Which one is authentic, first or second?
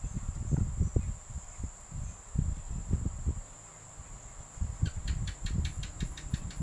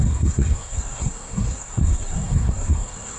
first